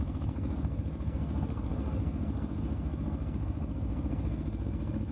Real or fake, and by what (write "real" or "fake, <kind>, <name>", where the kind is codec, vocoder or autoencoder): fake, codec, SNAC